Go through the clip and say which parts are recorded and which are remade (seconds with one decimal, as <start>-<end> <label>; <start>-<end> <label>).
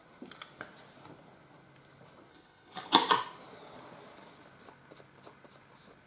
0.0-2.3 recorded; 2.3-2.9 remade; 2.9-6.1 recorded